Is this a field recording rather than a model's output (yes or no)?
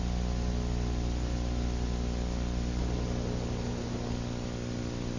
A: yes